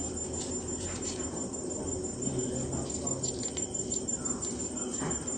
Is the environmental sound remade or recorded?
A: recorded